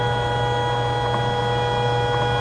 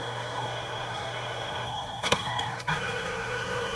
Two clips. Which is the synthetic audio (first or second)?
second